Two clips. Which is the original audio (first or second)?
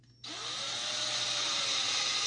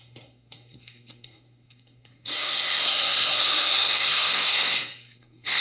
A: first